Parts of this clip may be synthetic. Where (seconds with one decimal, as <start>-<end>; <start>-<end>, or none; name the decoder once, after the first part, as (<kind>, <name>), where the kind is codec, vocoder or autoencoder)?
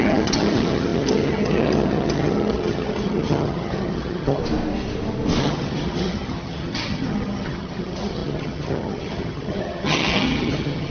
0.0-4.4 (vocoder, HiFi-GAN); 5.4-10.9